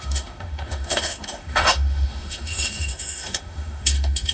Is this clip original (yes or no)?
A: no